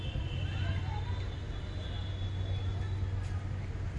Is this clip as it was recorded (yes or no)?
yes